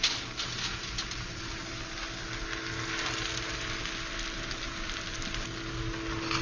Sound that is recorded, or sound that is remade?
recorded